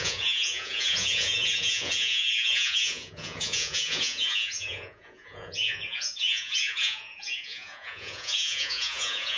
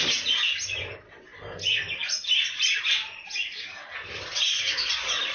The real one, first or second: second